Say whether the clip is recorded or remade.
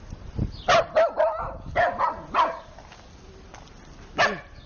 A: recorded